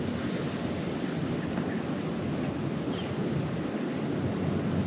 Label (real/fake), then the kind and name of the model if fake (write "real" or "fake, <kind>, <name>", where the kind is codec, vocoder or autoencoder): real